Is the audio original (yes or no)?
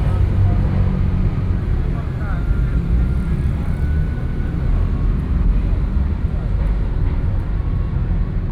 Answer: yes